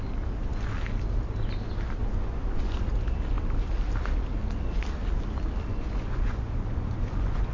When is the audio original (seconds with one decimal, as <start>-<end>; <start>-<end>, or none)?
0.0-2.0; 2.9-5.7